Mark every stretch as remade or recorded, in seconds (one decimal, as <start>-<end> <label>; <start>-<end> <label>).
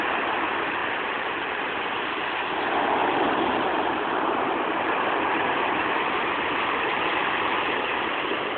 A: 0.0-0.8 recorded; 0.8-1.7 remade; 1.7-3.0 recorded; 3.0-6.2 remade; 6.2-8.6 recorded